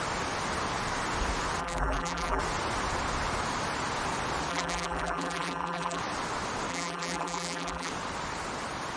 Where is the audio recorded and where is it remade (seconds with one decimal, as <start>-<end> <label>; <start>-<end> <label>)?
0.0-1.6 recorded; 1.6-2.4 remade; 2.4-4.5 recorded; 4.5-6.0 remade; 6.0-6.7 recorded; 6.7-7.9 remade; 7.9-9.0 recorded